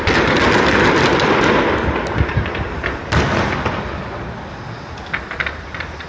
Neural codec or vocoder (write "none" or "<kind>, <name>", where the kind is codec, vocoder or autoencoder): none